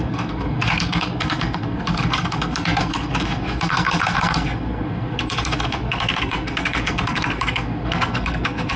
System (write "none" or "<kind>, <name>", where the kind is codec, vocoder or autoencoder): codec, SNAC